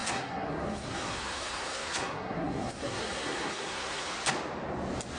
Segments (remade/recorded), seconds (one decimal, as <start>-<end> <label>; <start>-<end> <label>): 0.0-4.1 remade; 4.1-5.2 recorded